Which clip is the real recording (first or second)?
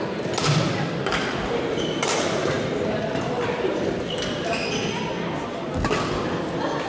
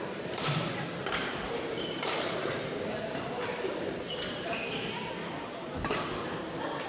first